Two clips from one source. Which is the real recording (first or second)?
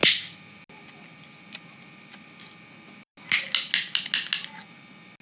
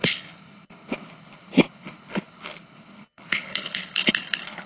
first